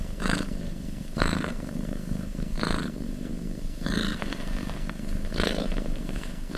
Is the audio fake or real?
fake